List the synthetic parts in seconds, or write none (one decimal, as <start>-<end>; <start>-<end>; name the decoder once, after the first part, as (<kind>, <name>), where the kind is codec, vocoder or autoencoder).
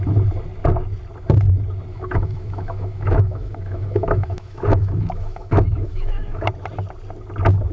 1.9-6.5 (autoencoder, DAC-VAE)